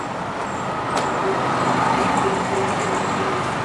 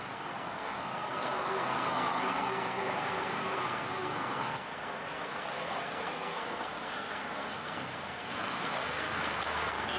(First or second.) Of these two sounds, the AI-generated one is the second